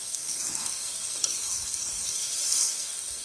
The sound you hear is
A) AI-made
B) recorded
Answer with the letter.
A